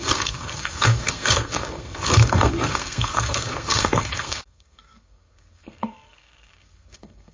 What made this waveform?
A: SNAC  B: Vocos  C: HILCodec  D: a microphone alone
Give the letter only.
A